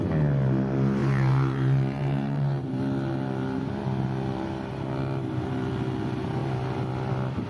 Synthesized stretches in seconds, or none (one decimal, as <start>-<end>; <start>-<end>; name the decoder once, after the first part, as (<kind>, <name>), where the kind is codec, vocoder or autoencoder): 1.0-2.7 (vocoder, BigVGAN v2)